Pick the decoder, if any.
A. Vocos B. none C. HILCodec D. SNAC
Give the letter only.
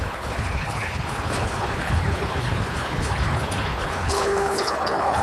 C